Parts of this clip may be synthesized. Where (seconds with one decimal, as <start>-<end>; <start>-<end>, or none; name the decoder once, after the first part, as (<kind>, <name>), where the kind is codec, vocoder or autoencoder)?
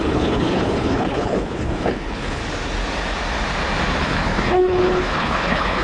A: 0.0-2.4 (codec, HILCodec); 4.0-5.8